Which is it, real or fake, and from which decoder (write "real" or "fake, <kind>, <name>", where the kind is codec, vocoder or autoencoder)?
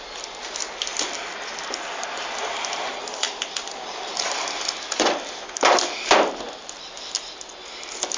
real